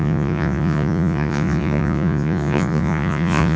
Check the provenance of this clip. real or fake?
fake